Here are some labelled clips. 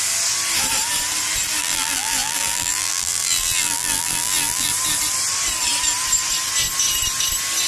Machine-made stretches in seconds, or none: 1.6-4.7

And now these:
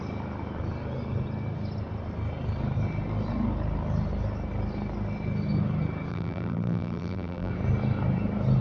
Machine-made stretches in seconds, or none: 6.1-7.5

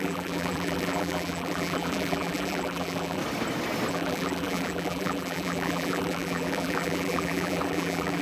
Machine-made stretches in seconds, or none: 0.0-3.2; 3.9-8.2

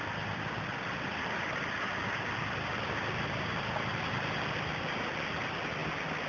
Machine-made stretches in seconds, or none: 0.0-5.8

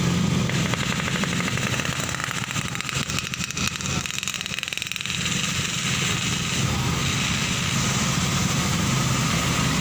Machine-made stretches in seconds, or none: 7.0-7.7

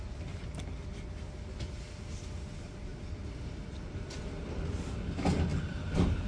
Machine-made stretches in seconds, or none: 2.9-4.2

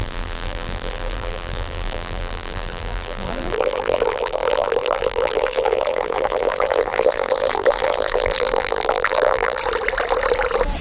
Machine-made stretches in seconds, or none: 0.0-9.6

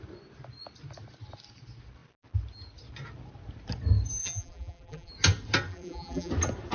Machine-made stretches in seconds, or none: 4.2-5.1; 5.7-6.3